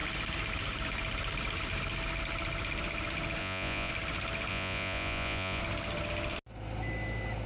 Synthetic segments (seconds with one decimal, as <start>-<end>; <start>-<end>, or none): 3.4-3.9; 4.5-5.6